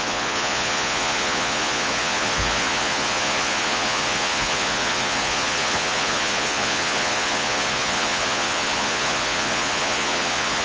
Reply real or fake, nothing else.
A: fake